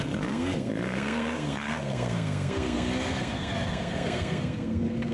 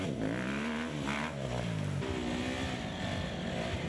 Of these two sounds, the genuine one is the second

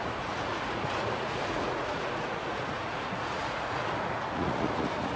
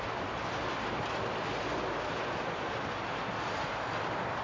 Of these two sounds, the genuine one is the second